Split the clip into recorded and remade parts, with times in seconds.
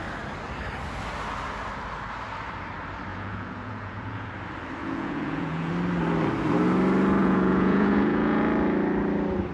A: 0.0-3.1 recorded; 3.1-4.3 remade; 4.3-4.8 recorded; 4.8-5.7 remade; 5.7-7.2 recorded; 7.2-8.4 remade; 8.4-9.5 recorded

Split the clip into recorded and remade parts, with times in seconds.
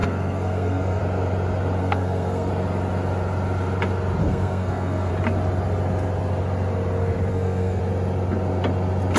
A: 0.0-1.0 remade; 1.0-1.8 recorded; 1.8-2.5 remade; 2.5-4.2 recorded; 4.2-5.1 remade; 5.1-7.3 recorded; 7.3-7.8 remade; 7.8-9.2 recorded